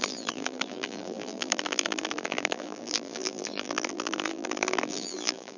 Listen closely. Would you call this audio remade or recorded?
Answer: remade